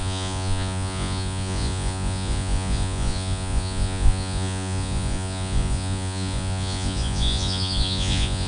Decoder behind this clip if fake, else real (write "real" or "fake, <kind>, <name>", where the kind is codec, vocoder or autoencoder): fake, vocoder, Vocos